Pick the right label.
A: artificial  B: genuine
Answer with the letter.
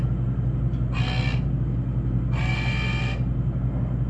B